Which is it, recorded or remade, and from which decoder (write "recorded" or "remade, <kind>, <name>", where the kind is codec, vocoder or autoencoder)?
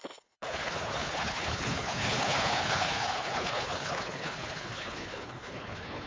remade, codec, HILCodec